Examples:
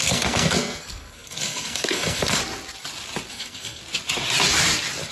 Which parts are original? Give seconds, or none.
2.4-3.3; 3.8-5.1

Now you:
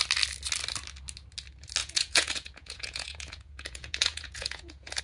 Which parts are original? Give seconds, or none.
0.0-1.8

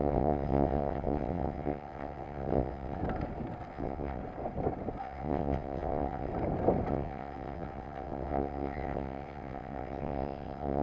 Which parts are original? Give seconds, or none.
3.0-3.7; 4.2-5.0; 6.3-6.9

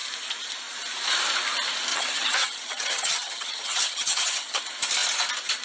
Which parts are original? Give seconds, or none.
0.0-1.9; 4.6-5.6

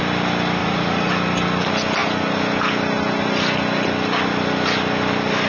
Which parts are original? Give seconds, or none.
0.0-0.6; 1.1-5.5

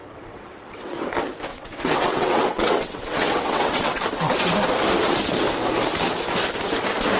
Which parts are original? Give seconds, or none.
1.1-1.5; 4.0-7.2

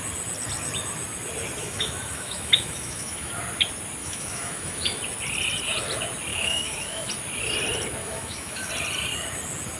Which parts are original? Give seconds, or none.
0.0-1.6; 3.3-4.0; 5.0-6.3; 7.1-8.0; 8.7-9.8